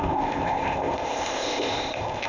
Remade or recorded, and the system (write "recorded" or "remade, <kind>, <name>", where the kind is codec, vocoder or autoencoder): remade, codec, ZipCodec